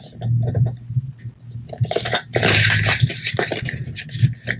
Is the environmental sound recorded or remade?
recorded